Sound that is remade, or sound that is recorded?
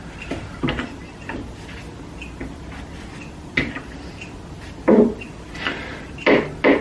recorded